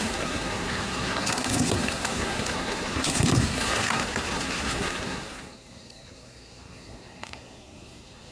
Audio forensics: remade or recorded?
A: remade